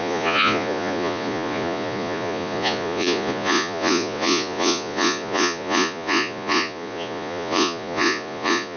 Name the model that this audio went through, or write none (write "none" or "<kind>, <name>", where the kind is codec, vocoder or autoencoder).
vocoder, Vocos